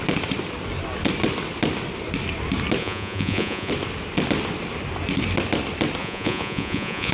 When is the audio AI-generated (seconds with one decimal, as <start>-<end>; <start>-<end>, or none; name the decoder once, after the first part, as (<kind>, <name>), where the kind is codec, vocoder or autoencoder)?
2.8-3.7 (vocoder, Vocos); 6.0-7.1